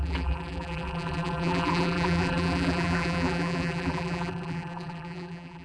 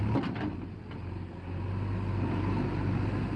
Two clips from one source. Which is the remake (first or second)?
first